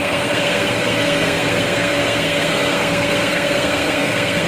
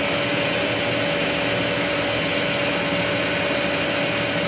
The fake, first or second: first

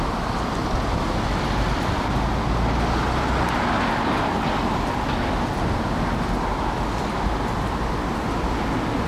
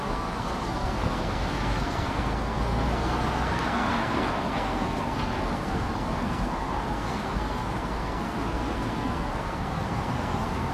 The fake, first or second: second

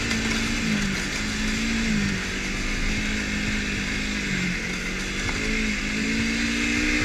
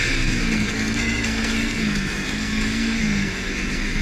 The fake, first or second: second